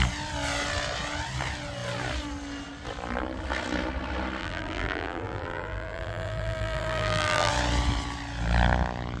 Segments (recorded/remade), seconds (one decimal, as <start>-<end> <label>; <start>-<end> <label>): 0.0-4.4 recorded; 4.4-7.5 remade; 7.5-9.2 recorded